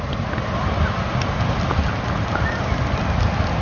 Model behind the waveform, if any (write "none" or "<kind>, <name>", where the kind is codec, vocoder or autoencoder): none